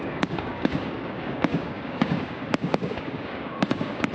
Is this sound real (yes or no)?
no